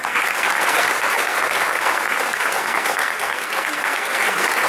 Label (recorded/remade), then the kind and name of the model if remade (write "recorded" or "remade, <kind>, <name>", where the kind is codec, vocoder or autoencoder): remade, codec, SNAC